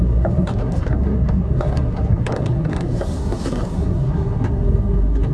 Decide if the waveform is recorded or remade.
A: remade